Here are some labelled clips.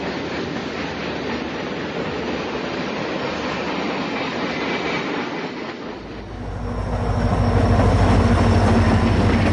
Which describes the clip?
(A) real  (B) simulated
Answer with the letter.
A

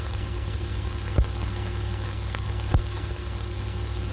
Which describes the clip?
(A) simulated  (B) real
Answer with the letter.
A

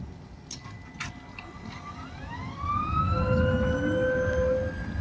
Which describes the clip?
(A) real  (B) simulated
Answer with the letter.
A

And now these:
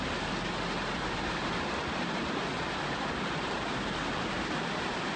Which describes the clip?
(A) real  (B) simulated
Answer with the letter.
A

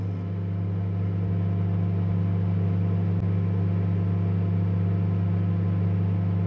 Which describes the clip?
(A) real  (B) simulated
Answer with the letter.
A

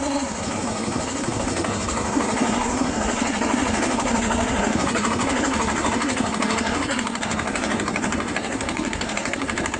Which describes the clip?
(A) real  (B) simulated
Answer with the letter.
B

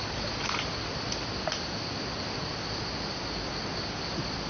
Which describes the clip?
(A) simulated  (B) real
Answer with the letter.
B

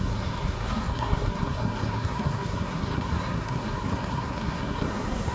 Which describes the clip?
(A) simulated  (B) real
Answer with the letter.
A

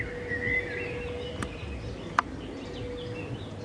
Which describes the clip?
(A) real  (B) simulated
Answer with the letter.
A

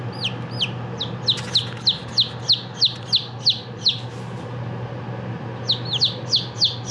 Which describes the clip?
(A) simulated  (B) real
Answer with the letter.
B